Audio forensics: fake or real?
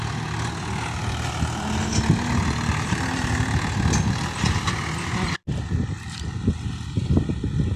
real